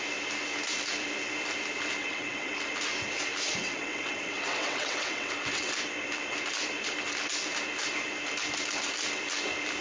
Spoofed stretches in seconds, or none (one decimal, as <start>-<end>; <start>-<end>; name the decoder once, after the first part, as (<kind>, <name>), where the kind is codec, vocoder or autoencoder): 2.0-2.6 (vocoder, WaveNeXt); 3.6-5.7